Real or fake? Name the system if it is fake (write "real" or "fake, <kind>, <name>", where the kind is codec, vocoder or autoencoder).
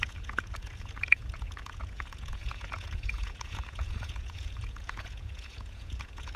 fake, vocoder, Vocos